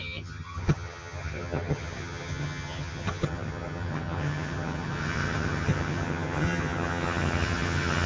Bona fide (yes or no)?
no